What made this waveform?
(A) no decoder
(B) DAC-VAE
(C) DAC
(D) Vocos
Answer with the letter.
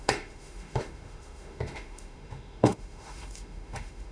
B